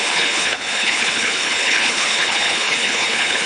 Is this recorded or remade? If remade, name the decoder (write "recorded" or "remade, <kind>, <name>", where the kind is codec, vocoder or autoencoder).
remade, codec, HILCodec